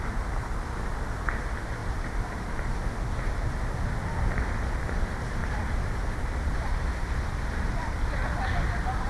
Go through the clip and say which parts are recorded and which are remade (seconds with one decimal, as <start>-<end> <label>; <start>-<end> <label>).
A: 0.0-1.8 recorded; 1.8-2.5 remade; 2.5-5.4 recorded; 5.4-7.5 remade; 7.5-9.1 recorded